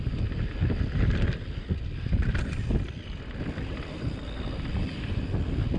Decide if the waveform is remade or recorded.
recorded